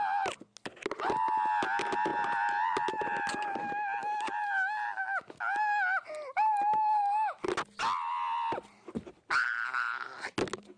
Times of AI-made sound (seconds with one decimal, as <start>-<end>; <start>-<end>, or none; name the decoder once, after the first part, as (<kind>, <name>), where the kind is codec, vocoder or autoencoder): none